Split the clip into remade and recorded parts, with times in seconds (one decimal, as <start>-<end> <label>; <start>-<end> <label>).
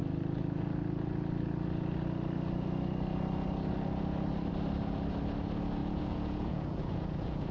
0.0-5.8 recorded; 5.8-7.5 remade